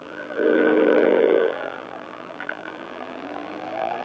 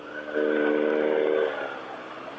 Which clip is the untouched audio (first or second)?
second